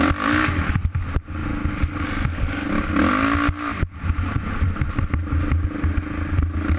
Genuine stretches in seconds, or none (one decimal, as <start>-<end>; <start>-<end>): 0.0-6.8